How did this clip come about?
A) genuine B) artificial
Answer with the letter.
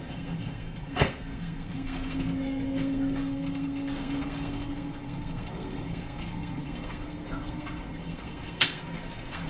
B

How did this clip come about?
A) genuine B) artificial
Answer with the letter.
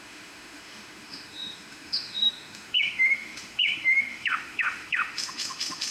B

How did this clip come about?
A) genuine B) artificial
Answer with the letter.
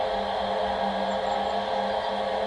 A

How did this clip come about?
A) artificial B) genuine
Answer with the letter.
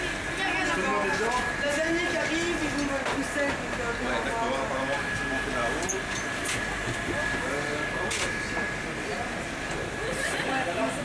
B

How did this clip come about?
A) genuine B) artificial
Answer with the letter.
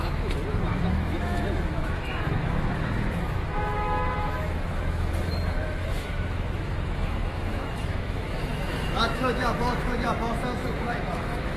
B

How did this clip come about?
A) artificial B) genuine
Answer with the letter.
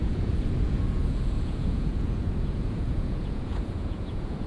A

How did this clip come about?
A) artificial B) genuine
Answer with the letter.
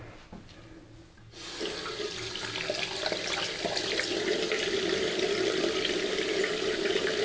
B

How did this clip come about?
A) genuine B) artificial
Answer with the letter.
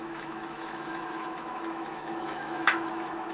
B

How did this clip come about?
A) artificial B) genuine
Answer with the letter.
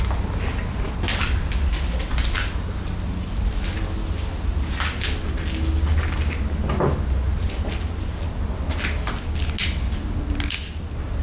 B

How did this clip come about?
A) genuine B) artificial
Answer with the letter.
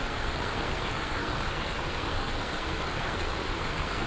B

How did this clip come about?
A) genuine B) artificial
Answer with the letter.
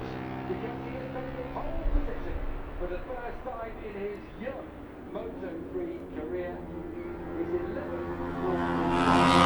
A